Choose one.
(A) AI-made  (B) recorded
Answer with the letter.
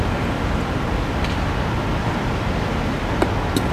B